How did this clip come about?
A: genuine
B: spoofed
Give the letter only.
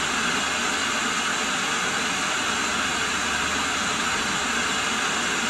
A